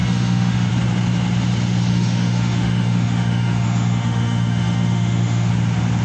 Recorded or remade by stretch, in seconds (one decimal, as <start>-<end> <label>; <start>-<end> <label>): 0.0-0.7 remade; 0.7-1.9 recorded; 1.9-5.5 remade; 5.5-6.0 recorded